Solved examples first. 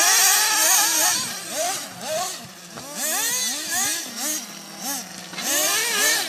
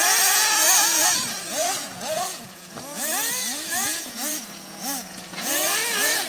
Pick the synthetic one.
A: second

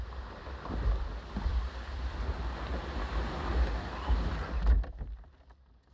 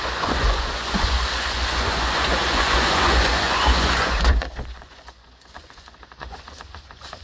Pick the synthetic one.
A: second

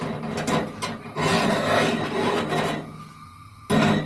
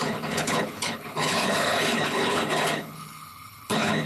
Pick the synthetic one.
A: second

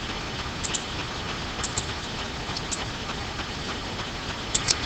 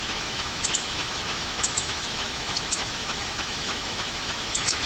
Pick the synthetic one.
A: second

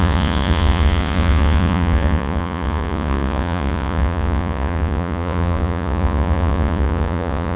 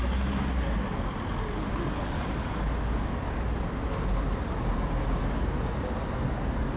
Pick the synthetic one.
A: first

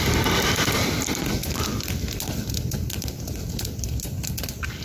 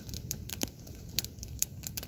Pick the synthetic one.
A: second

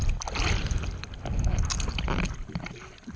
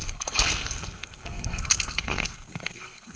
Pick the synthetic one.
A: second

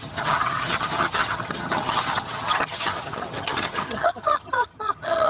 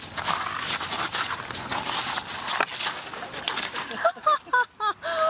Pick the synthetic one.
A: first